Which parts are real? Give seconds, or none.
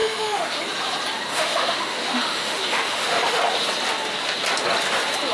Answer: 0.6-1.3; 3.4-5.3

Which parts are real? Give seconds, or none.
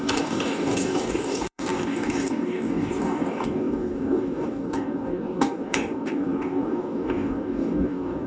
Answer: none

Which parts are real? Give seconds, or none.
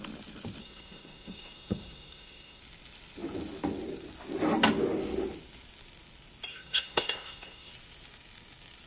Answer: 0.0-0.6; 2.6-6.5; 7.7-8.9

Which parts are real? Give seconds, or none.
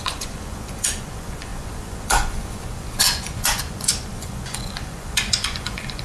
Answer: none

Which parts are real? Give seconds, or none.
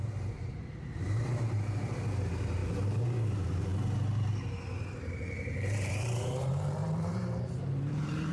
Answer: none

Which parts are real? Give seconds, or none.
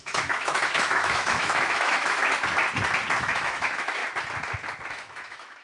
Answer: 2.2-3.2; 4.0-4.9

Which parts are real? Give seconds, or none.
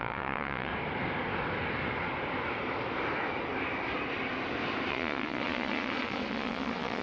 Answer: 0.7-4.9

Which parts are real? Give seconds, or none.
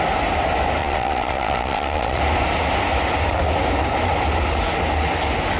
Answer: 0.0-0.8; 2.2-5.6